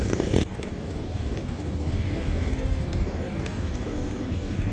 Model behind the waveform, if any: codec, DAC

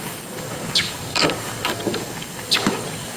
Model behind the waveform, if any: codec, DAC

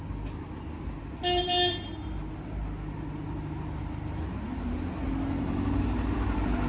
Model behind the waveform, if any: none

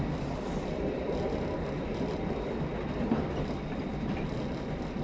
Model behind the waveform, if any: none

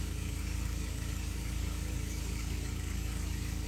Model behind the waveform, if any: codec, DAC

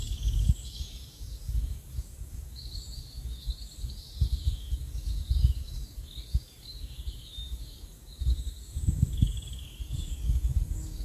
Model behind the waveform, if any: codec, DAC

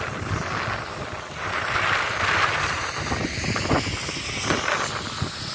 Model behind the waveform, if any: none